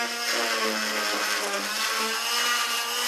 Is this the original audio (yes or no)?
yes